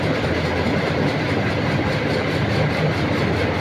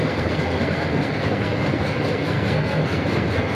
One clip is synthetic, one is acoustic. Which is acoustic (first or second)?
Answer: first